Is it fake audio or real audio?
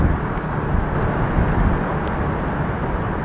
real